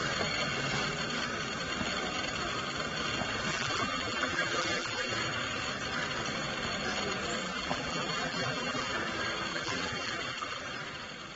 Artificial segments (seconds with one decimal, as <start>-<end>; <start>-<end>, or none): 3.5-5.1; 7.4-8.9; 9.5-10.6